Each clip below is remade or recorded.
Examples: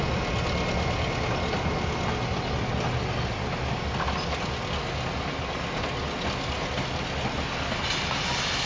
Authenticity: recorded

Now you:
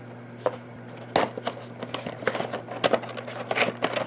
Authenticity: recorded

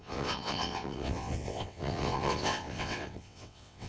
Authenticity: remade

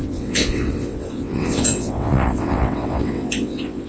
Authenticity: remade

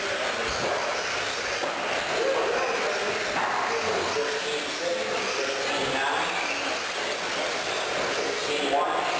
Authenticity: recorded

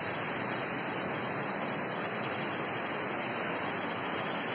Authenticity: recorded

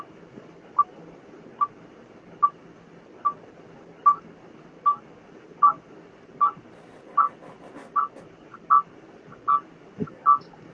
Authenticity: recorded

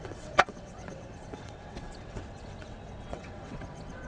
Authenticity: remade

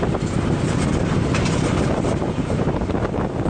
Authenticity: recorded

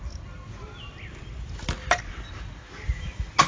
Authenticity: recorded